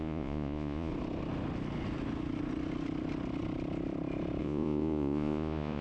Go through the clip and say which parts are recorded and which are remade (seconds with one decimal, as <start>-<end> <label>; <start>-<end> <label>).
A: 0.0-0.9 remade; 0.9-4.4 recorded; 4.4-5.8 remade